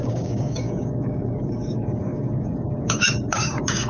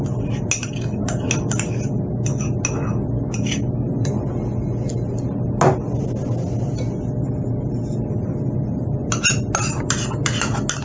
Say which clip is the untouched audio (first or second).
second